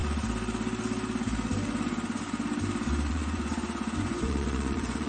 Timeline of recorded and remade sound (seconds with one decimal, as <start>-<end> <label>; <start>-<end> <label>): 0.0-3.1 recorded; 3.1-5.1 remade

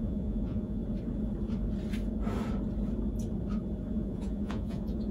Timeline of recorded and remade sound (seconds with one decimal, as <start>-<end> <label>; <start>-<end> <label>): 0.0-0.8 remade; 0.8-3.9 recorded; 3.9-5.1 remade

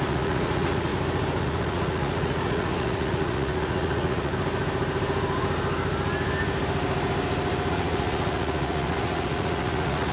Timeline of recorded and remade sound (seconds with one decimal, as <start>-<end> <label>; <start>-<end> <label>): 0.0-0.9 remade; 0.9-1.4 recorded; 1.4-4.3 remade; 4.3-7.7 recorded; 7.7-10.1 remade

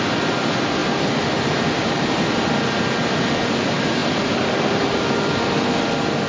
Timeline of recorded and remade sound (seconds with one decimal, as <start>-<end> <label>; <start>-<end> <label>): 0.0-6.3 recorded

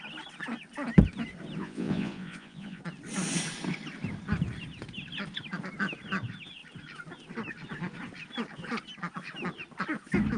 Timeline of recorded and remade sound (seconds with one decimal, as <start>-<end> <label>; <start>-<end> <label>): 0.0-1.6 recorded; 1.6-2.8 remade; 2.8-10.4 recorded

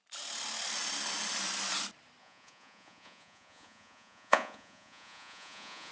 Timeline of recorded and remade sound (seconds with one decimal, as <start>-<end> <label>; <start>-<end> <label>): 0.0-2.2 recorded; 2.2-5.9 remade

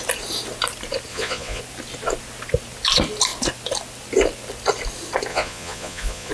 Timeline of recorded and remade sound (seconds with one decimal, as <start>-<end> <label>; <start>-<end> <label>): 0.0-1.1 recorded; 1.1-1.6 remade; 1.6-5.3 recorded; 5.3-6.3 remade

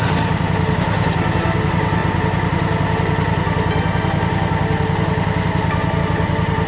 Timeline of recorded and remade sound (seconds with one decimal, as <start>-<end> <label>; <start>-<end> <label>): 0.0-6.7 recorded